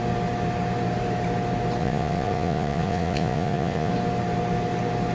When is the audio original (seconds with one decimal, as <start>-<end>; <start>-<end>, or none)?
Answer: 0.0-1.8; 3.9-5.1